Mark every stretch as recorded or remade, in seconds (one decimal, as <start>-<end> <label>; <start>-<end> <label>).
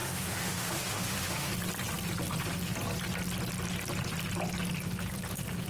0.0-1.5 remade; 1.5-5.7 recorded